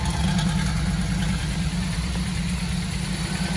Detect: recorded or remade recorded